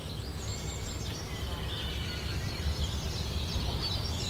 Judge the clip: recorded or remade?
recorded